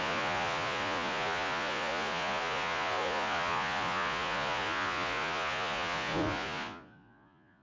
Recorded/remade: remade